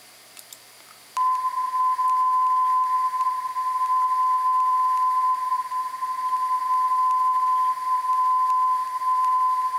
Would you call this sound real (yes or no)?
yes